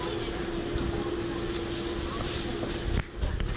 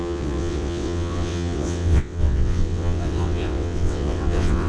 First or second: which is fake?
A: second